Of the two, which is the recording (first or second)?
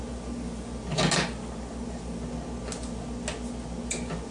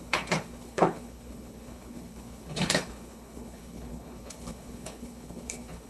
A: first